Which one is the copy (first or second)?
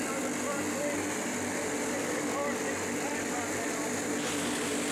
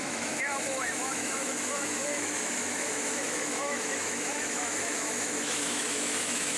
second